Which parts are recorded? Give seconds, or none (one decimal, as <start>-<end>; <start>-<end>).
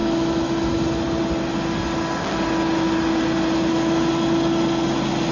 0.0-5.3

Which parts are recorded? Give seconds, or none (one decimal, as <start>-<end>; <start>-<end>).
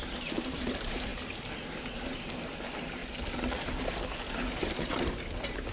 1.1-2.0; 3.0-3.8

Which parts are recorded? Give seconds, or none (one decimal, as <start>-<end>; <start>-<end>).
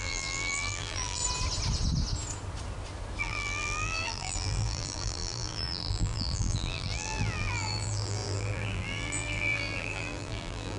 1.2-3.2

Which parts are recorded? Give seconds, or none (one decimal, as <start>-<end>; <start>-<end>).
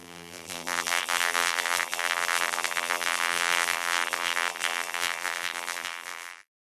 none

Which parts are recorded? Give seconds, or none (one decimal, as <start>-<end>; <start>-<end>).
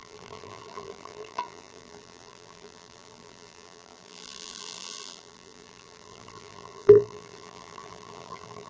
none